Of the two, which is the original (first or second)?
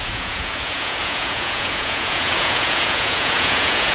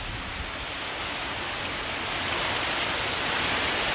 second